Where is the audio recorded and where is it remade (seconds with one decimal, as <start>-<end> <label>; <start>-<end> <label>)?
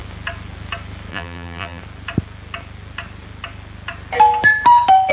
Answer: 0.0-1.1 recorded; 1.1-1.8 remade; 1.8-5.1 recorded